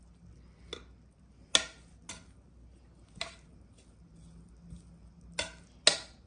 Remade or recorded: recorded